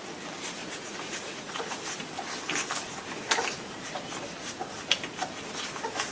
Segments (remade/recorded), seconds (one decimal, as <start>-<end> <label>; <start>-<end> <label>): 0.0-0.6 recorded; 0.6-1.8 remade; 1.8-6.1 recorded